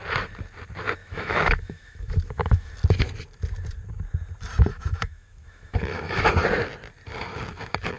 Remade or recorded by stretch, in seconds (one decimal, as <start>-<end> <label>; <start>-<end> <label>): 0.0-1.0 recorded; 1.0-2.7 remade; 2.7-4.7 recorded; 4.7-6.3 remade; 6.3-8.0 recorded